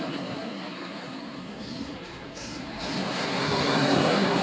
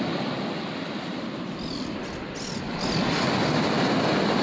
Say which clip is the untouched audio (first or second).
second